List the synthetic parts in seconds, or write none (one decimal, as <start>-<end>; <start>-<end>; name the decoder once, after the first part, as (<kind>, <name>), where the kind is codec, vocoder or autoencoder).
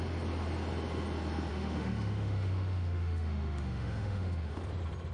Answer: 1.5-4.6 (autoencoder, DAC-VAE)